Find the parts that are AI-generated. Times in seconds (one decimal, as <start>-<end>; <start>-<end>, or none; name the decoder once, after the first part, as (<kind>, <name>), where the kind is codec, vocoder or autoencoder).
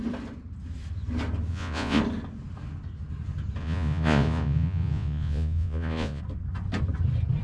1.5-2.0 (vocoder, Vocos); 3.6-6.2